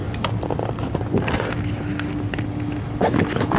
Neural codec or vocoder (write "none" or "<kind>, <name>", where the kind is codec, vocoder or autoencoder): none